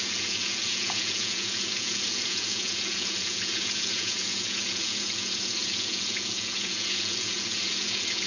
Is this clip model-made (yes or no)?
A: yes